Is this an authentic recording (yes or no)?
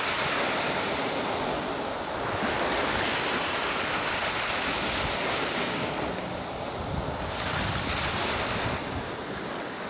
yes